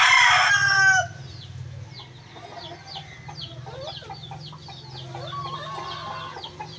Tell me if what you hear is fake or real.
real